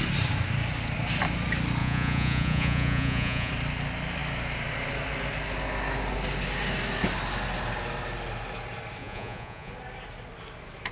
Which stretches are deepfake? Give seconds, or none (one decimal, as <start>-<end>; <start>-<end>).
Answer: 1.8-3.5; 9.0-9.7